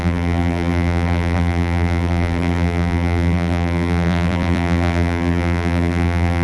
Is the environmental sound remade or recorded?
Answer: remade